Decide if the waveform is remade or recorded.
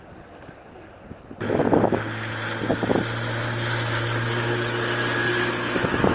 recorded